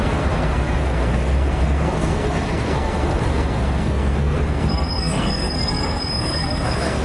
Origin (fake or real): fake